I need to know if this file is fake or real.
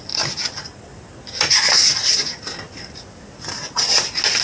real